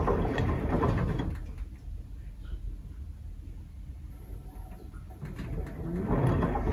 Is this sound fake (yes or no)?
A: no